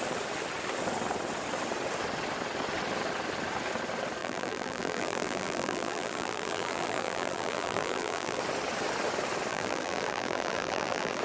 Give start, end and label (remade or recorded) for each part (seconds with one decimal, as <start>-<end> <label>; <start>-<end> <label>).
0.0-4.2 recorded; 4.2-8.4 remade; 8.4-9.5 recorded; 9.5-11.2 remade

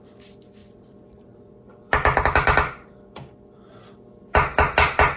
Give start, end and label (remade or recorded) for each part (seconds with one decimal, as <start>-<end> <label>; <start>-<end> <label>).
0.0-0.6 recorded; 0.6-3.7 remade; 3.7-5.2 recorded

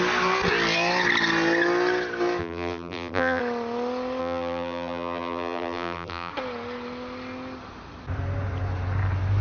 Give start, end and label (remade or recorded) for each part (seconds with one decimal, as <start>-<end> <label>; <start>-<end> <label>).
0.0-2.4 recorded; 2.4-3.4 remade; 3.4-4.2 recorded; 4.2-6.3 remade; 6.3-9.4 recorded